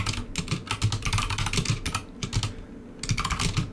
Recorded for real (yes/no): yes